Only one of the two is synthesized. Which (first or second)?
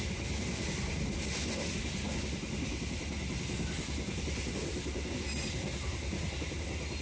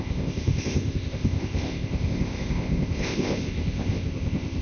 second